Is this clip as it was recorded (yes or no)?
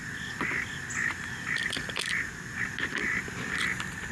yes